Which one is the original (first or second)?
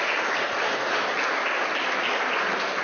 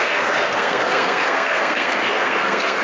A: first